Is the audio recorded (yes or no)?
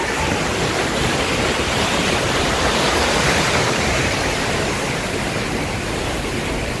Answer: no